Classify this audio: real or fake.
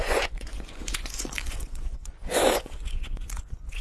fake